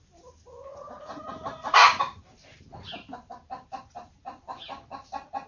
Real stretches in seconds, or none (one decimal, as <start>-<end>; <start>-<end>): 0.0-0.7; 2.0-5.5